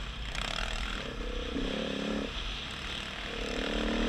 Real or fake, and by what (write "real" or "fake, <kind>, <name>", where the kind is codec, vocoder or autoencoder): real